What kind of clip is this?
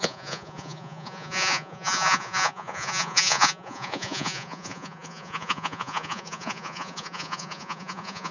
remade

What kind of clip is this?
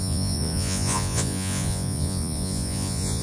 remade